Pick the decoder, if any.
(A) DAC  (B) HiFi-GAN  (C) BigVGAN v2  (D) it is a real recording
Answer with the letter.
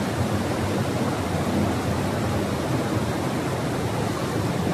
D